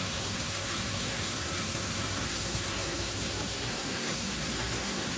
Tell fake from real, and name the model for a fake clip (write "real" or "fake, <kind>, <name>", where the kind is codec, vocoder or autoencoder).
fake, codec, SNAC